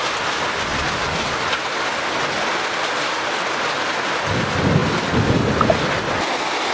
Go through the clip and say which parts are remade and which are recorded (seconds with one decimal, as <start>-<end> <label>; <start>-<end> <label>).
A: 0.0-6.7 recorded